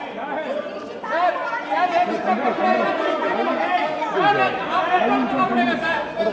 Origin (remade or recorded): recorded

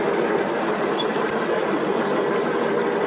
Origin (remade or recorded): recorded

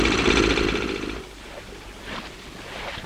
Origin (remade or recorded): recorded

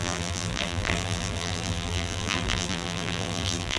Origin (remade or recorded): remade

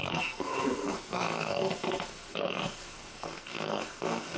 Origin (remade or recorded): remade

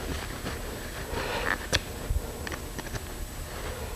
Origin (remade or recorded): recorded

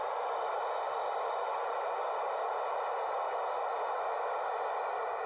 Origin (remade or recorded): recorded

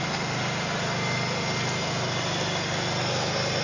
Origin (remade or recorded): recorded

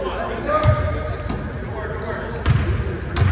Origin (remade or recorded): recorded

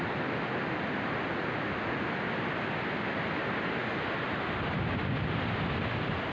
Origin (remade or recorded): recorded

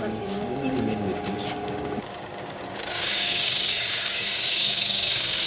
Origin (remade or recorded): remade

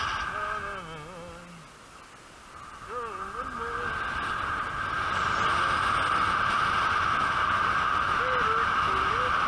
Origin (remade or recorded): recorded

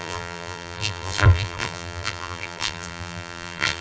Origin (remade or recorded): remade